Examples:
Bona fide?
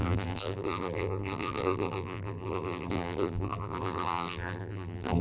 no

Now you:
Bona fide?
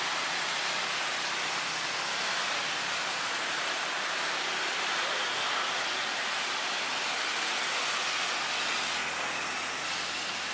yes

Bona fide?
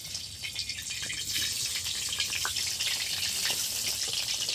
yes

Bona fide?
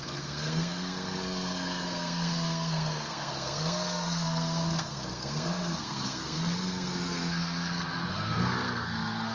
no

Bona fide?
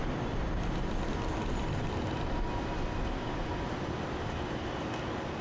yes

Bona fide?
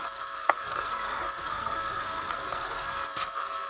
no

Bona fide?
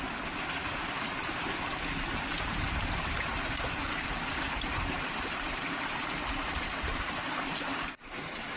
no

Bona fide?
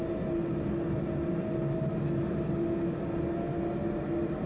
yes